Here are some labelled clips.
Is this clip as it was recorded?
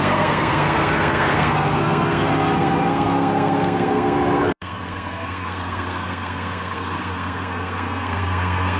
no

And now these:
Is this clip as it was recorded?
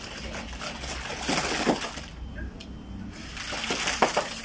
yes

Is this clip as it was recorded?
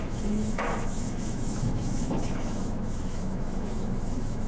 no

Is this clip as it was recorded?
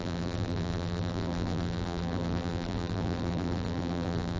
no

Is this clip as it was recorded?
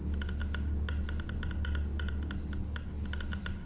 yes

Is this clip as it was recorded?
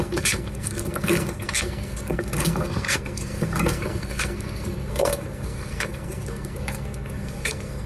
no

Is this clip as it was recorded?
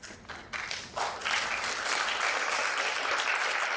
yes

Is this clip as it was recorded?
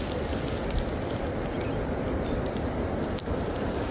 yes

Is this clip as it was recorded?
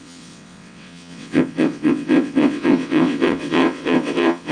no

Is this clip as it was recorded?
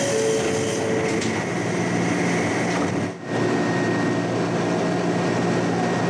yes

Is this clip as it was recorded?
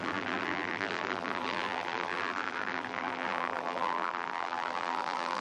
no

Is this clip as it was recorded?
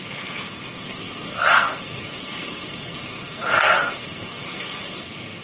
no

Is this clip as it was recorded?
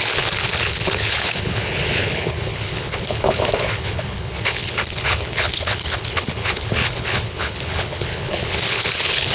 no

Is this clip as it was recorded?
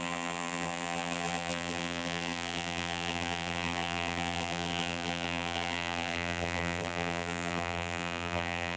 no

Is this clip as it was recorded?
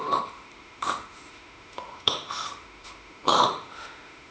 no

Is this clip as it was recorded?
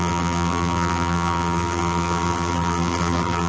no